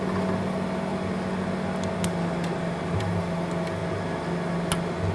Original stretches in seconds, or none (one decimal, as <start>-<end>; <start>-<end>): 0.9-3.0; 3.8-5.1